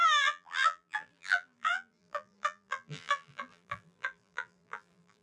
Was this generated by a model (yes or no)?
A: yes